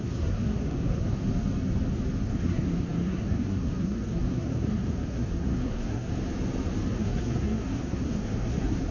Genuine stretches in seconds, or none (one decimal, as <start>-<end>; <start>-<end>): 1.2-2.2; 6.1-7.0